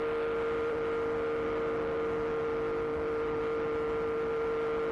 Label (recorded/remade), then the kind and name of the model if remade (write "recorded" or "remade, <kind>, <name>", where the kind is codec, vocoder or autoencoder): recorded